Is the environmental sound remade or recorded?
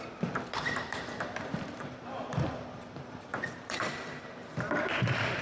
remade